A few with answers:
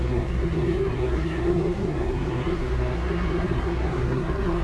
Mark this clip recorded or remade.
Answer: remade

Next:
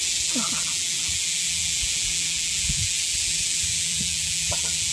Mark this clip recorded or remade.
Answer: remade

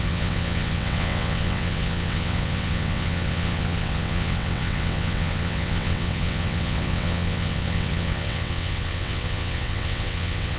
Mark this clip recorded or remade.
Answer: remade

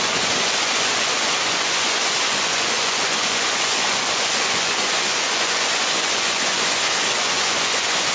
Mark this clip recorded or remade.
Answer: remade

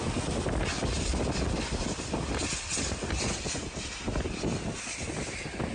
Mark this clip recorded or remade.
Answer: recorded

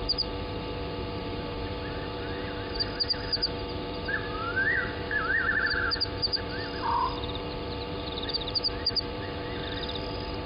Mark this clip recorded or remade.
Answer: remade